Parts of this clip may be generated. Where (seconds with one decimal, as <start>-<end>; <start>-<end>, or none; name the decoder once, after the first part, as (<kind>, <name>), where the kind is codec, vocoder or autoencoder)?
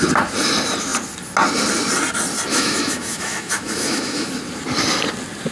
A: 2.5-4.3 (autoencoder, DAC-VAE)